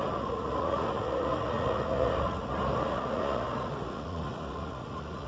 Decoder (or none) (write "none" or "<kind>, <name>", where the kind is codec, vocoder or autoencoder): vocoder, Vocos